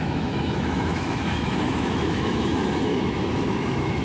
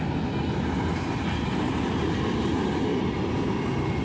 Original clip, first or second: second